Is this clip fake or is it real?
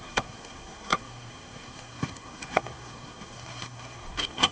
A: fake